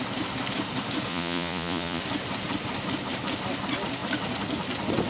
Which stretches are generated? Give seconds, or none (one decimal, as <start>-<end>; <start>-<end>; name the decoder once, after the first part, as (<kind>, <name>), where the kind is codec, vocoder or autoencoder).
1.1-2.0 (vocoder, Vocos)